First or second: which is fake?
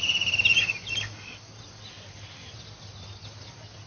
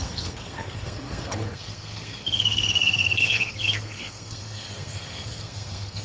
second